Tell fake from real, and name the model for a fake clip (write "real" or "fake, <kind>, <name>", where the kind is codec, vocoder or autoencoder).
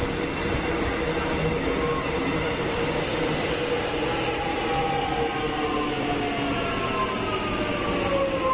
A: real